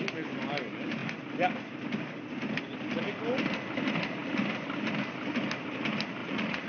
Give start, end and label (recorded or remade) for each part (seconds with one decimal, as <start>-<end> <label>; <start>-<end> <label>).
0.0-6.2 recorded; 6.2-6.7 remade